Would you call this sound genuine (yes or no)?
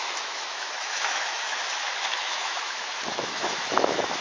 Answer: no